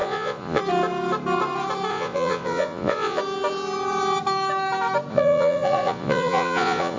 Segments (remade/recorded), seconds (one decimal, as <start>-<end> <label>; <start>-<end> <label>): 0.0-0.6 remade; 0.6-1.9 recorded; 1.9-3.2 remade; 3.2-5.1 recorded; 5.1-7.0 remade

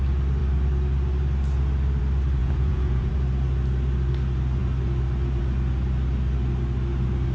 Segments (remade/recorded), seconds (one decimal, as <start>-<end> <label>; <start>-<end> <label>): 0.0-2.4 recorded; 2.4-3.1 remade; 3.1-7.3 recorded

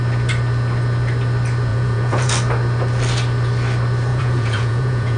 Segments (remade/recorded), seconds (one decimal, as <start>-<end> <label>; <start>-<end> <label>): 0.0-1.7 recorded; 1.7-2.3 remade; 2.3-4.1 recorded; 4.1-5.2 remade

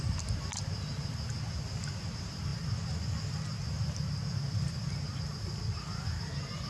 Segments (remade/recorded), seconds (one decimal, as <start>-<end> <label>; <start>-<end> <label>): 0.0-6.7 recorded

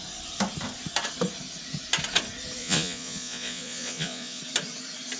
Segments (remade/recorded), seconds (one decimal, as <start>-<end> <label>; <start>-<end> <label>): 0.0-2.6 recorded; 2.6-4.4 remade; 4.4-5.2 recorded

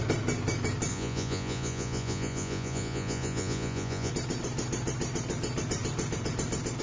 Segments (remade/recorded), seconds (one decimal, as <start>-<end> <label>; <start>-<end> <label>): 0.0-0.9 recorded; 0.9-4.1 remade; 4.1-6.8 recorded

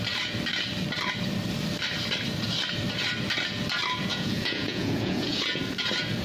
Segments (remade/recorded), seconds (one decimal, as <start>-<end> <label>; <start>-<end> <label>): 0.0-4.1 recorded; 4.1-5.6 remade; 5.6-6.2 recorded